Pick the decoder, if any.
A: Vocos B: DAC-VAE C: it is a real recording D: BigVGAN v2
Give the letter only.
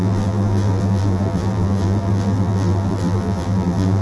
D